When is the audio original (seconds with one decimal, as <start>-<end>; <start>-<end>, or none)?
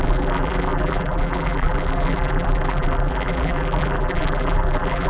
none